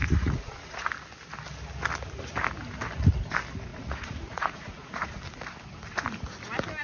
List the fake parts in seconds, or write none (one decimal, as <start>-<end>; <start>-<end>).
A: 0.0-0.9; 3.7-5.2

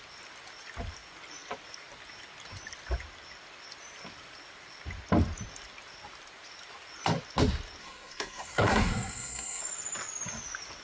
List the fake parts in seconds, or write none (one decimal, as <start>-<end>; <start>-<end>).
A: 7.8-9.6